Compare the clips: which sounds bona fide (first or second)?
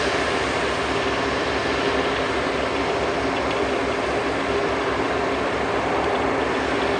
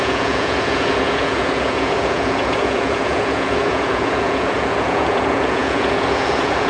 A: first